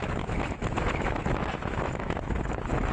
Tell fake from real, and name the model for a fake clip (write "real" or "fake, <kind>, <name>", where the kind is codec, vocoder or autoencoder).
fake, autoencoder, DAC-VAE